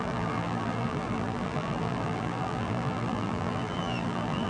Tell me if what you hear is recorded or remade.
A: remade